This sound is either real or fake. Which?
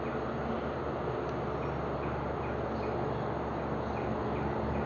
real